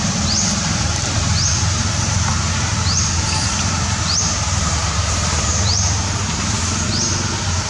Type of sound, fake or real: fake